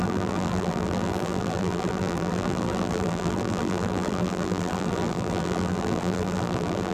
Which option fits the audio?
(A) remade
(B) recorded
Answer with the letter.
A